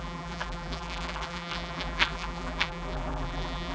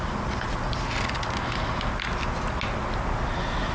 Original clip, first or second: second